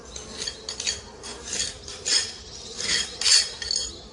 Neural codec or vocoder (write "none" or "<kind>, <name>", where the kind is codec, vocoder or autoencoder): none